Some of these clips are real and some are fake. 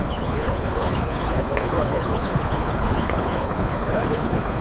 fake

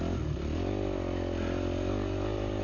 real